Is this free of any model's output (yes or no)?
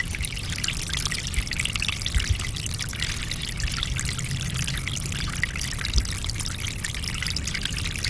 yes